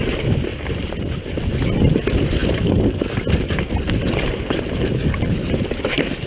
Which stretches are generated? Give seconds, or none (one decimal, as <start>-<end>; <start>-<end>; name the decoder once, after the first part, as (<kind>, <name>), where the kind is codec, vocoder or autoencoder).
2.4-6.3 (vocoder, BigVGAN v2)